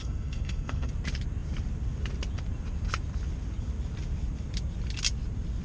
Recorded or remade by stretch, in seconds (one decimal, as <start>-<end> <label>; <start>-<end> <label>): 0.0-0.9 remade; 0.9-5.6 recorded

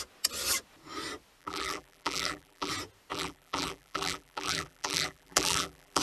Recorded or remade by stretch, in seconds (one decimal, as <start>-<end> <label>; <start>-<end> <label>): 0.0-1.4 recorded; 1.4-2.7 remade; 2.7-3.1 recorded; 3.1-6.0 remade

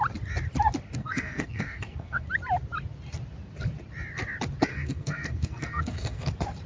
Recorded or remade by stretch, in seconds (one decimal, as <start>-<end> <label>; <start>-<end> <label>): 0.0-1.0 recorded; 1.0-2.3 remade; 2.3-4.7 recorded; 4.7-6.3 remade; 6.3-6.7 recorded

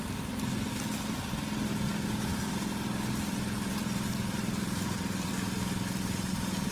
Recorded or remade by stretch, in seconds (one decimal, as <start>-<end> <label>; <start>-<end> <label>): 0.0-3.7 recorded; 3.7-5.3 remade; 5.3-6.7 recorded